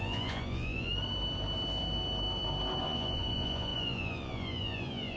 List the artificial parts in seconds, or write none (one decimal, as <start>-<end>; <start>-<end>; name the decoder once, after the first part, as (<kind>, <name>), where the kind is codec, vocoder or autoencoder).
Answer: 0.0-0.9 (vocoder, Vocos); 2.8-5.2